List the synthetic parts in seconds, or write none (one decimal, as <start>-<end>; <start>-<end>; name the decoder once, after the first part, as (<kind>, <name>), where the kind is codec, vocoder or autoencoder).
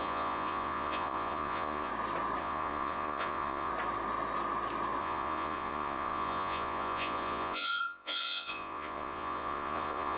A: 0.0-1.9 (vocoder, Vocos); 2.4-3.7; 5.0-10.2